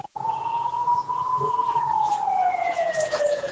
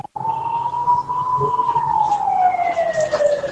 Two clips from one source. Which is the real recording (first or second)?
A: second